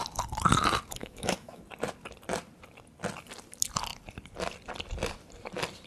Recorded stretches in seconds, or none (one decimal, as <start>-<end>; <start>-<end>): 0.0-1.0; 1.6-5.9